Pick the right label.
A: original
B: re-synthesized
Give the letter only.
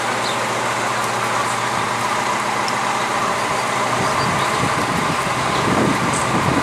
A